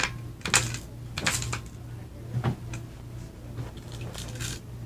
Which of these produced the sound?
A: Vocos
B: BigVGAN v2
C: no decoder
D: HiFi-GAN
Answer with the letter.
C